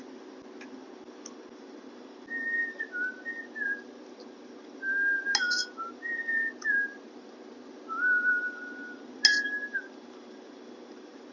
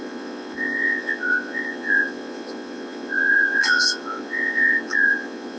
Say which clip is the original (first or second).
first